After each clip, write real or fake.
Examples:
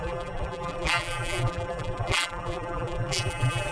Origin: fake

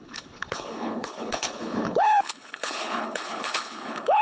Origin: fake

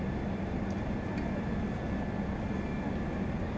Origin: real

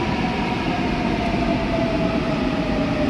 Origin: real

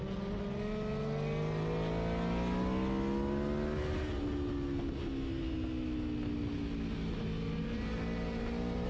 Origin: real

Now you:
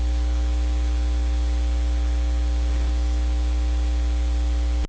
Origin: real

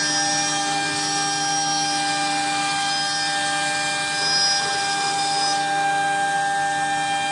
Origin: real